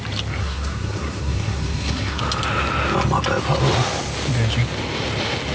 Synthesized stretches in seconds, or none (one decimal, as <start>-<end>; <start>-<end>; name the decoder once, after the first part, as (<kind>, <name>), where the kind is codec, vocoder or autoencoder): 0.4-2.2 (codec, SNAC)

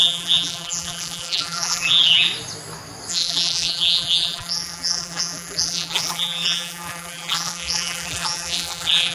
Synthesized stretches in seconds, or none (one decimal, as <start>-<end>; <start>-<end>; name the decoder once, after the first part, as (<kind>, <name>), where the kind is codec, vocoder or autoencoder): 0.0-2.3 (vocoder, BigVGAN v2); 3.1-9.1

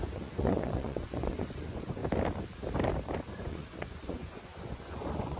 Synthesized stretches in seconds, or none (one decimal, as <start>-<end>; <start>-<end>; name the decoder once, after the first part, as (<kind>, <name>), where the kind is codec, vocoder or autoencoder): 0.0-2.0 (vocoder, Vocos); 3.2-5.4

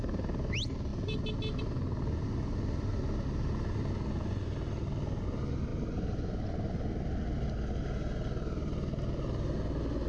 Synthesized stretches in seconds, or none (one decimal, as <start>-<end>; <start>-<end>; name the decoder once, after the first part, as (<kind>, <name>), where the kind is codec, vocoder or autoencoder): none

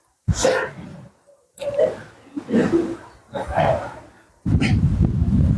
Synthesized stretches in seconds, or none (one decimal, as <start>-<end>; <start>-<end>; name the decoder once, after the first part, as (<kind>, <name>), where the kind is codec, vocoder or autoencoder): 0.9-1.8 (vocoder, BigVGAN v2); 2.6-5.0

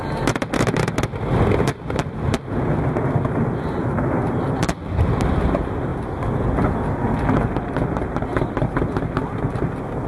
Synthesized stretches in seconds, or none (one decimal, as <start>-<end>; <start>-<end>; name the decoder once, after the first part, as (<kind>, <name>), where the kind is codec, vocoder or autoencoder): none

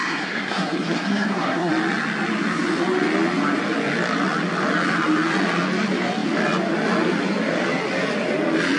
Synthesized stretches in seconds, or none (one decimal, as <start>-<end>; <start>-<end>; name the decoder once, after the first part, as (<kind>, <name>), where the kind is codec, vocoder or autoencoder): 0.0-1.7 (codec, SNAC)

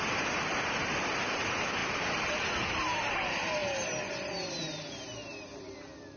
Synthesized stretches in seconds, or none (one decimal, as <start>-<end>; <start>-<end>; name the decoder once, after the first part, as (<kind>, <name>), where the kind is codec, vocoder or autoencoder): 1.8-3.1 (vocoder, BigVGAN v2)